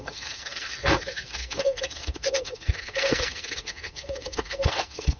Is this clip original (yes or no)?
no